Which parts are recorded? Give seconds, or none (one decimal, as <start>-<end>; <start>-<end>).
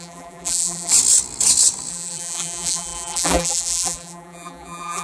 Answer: 0.9-1.9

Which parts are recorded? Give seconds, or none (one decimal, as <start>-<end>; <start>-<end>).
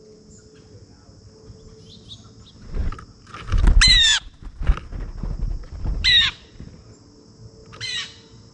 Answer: 0.0-2.8; 3.3-7.6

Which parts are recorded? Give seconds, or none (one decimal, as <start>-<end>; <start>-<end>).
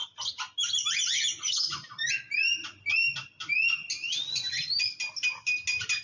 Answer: 2.1-6.0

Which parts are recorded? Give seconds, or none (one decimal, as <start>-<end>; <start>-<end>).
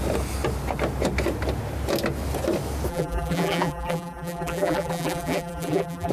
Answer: 0.0-2.9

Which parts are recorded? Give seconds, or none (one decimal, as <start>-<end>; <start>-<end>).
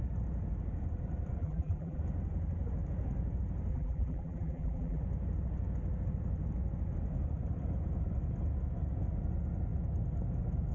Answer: 0.0-1.4; 2.0-3.7; 5.0-10.7